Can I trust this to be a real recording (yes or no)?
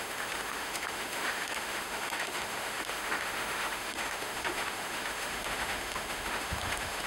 no